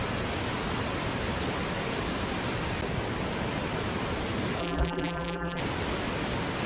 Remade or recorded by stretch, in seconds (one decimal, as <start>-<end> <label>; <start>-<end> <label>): 0.0-4.6 recorded; 4.6-5.6 remade; 5.6-6.7 recorded